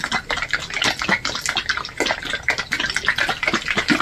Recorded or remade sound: recorded